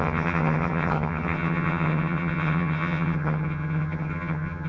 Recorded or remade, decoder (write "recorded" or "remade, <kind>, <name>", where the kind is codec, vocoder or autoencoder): remade, vocoder, HiFi-GAN